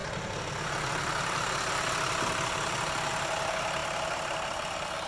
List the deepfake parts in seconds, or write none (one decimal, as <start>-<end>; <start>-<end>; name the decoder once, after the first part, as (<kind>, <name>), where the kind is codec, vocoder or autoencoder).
none